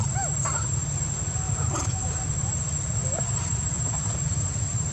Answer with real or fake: fake